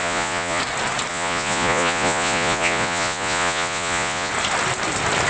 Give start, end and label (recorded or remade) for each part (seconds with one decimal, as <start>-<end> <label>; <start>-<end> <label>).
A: 0.0-0.6 remade; 0.6-1.1 recorded; 1.1-4.3 remade; 4.3-5.3 recorded